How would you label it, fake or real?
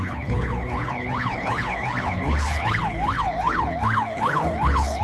fake